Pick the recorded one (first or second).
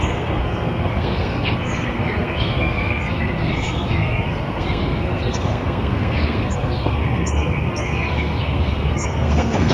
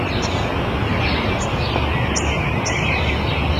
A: second